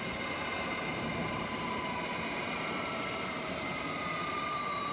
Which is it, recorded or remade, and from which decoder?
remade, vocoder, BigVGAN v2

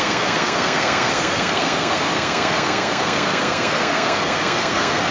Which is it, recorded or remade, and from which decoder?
remade, codec, SNAC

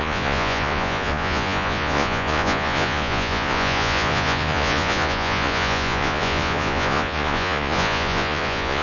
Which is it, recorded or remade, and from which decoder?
remade, vocoder, Vocos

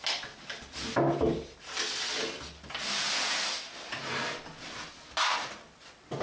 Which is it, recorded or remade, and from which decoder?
recorded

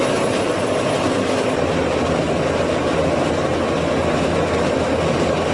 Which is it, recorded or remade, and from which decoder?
recorded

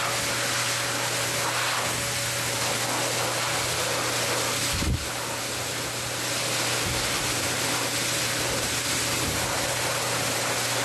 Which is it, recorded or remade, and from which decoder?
recorded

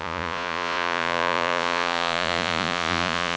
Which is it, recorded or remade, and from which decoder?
remade, vocoder, Vocos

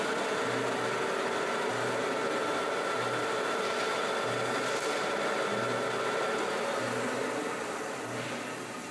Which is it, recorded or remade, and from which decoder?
recorded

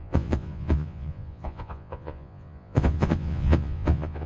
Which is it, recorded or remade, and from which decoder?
remade, vocoder, Vocos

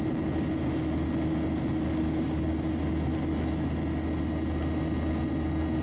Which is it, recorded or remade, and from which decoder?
recorded